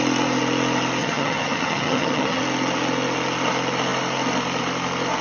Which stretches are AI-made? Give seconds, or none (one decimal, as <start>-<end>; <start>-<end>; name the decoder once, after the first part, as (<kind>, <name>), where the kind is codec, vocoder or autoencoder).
1.0-2.4 (vocoder, HiFi-GAN)